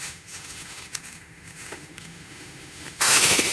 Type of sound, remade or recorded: remade